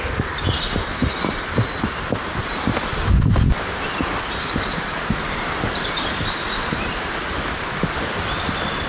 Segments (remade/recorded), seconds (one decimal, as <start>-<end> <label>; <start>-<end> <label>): 0.0-8.9 remade